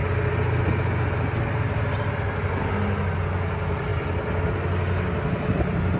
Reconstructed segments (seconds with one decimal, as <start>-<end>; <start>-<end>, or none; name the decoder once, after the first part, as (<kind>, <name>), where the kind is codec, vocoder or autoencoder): none

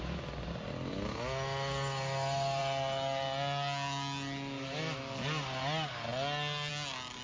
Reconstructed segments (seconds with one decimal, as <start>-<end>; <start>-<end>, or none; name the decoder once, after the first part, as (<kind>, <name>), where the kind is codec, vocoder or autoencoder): none

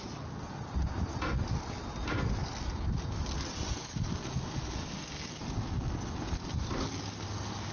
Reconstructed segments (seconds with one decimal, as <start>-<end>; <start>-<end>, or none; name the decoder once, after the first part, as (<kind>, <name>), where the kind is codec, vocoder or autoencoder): none

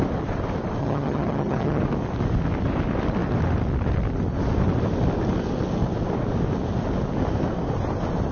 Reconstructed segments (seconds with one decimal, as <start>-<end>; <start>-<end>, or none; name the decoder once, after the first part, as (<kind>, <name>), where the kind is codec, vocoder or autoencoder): 0.8-1.8 (vocoder, HiFi-GAN)

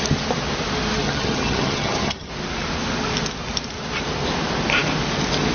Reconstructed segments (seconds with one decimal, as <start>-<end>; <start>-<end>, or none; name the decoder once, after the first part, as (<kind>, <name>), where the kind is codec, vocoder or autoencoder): 1.0-2.3 (vocoder, HiFi-GAN)

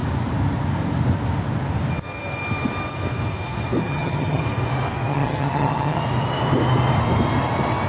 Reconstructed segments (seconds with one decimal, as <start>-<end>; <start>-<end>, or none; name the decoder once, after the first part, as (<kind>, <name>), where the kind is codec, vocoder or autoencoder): 3.8-4.4 (vocoder, HiFi-GAN); 5.1-6.0